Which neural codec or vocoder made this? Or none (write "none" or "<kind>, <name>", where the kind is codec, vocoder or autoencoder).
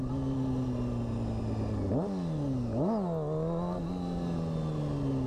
none